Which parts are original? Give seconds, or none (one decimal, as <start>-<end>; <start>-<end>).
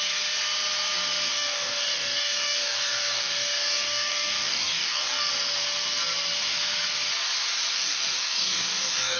0.0-1.3; 5.3-7.7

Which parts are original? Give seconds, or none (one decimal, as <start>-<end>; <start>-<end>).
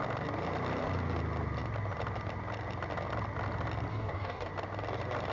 0.0-3.9; 4.5-5.3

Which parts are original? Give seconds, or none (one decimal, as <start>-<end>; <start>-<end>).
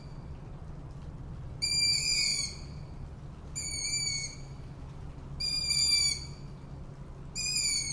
0.0-7.9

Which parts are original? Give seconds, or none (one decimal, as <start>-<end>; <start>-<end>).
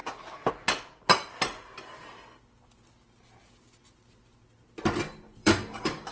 0.0-5.4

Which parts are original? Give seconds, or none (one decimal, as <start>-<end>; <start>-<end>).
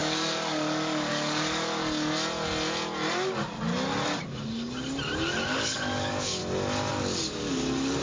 1.8-5.4; 6.4-6.9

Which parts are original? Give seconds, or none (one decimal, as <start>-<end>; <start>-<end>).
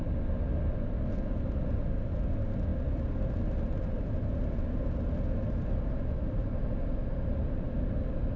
0.0-8.4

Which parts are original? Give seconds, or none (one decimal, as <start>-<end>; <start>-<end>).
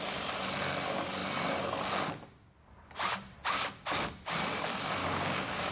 0.0-5.0